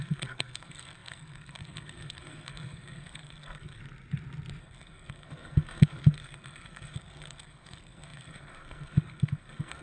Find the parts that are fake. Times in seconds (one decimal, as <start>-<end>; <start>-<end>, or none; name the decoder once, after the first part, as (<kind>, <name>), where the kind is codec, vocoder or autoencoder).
0.0-3.8 (codec, SNAC); 4.6-9.8